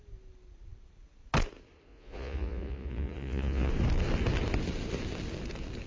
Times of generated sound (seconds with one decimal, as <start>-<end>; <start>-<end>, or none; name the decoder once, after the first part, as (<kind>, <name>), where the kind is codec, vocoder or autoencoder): 1.9-3.7 (vocoder, Vocos)